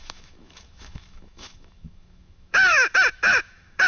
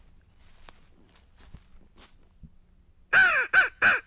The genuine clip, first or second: second